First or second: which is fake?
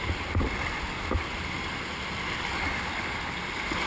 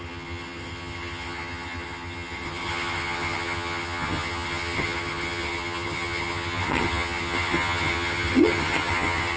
second